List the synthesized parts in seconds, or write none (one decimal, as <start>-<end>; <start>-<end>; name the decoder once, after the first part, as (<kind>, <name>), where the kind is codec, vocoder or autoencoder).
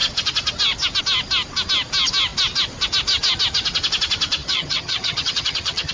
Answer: 4.4-5.9 (vocoder, HiFi-GAN)